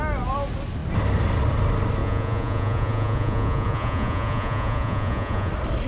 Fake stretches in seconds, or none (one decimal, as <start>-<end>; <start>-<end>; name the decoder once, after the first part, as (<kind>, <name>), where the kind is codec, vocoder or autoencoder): 2.0-5.5 (vocoder, Vocos)